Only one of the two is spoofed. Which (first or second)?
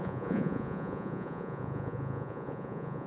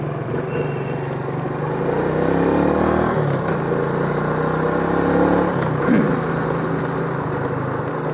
first